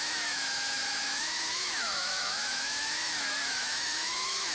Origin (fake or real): fake